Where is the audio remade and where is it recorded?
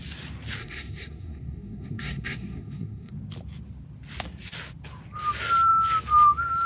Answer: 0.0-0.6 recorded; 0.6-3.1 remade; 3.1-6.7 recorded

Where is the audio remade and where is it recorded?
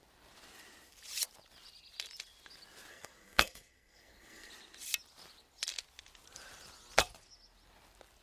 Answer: 0.0-2.9 recorded; 2.9-4.5 remade; 4.5-8.2 recorded